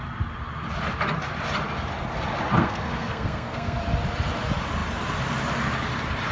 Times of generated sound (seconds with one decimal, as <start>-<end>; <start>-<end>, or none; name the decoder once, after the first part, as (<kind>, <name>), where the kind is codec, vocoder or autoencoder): 2.6-3.8 (codec, SNAC)